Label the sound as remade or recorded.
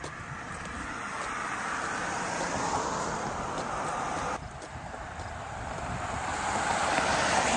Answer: recorded